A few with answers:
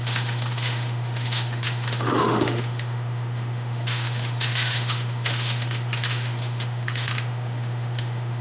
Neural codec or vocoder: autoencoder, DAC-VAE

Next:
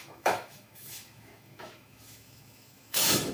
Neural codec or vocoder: autoencoder, DAC-VAE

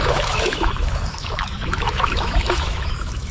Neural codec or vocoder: autoencoder, DAC-VAE